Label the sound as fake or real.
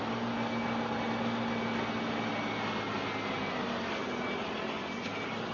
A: real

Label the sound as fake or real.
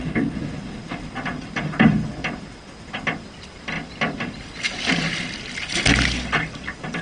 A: real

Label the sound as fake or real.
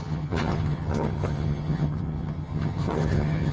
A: fake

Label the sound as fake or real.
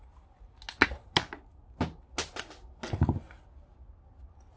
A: real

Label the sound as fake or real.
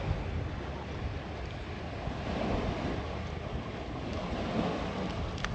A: real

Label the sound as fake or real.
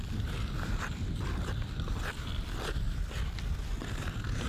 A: real